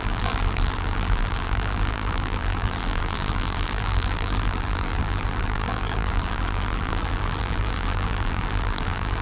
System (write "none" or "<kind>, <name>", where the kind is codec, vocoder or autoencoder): vocoder, BigVGAN v2